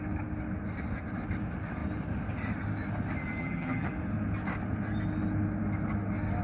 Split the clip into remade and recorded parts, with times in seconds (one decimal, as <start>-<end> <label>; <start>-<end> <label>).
0.0-3.4 recorded; 3.4-3.9 remade; 3.9-6.4 recorded